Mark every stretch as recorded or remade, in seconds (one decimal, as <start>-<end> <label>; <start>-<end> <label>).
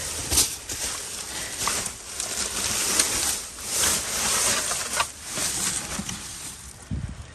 0.0-7.3 recorded